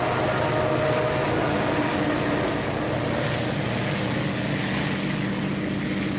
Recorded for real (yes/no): yes